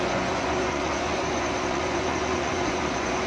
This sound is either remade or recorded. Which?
remade